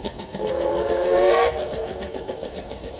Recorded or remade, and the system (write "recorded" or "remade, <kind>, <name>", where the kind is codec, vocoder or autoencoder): remade, codec, SNAC